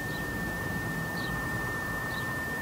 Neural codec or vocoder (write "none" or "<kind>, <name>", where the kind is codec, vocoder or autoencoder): vocoder, BigVGAN v2